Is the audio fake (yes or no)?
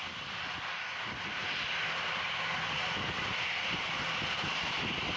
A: no